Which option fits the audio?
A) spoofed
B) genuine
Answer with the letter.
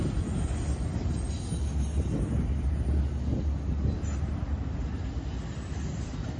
B